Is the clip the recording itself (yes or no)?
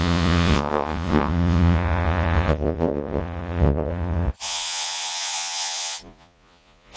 no